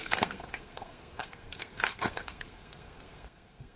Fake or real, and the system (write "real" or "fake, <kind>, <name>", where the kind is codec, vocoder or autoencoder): fake, codec, SNAC